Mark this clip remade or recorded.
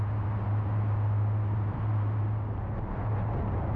recorded